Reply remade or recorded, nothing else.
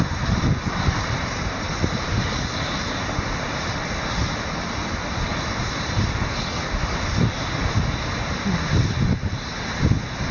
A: recorded